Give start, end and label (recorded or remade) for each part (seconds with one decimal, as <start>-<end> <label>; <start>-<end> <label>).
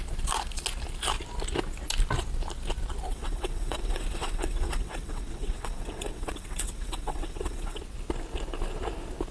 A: 0.0-3.1 recorded; 3.1-7.8 remade; 7.8-9.3 recorded